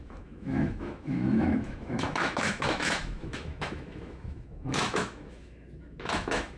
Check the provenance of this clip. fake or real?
fake